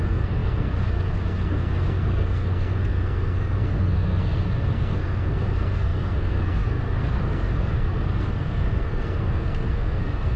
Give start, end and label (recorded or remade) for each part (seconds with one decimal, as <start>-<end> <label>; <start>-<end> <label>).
0.0-10.4 remade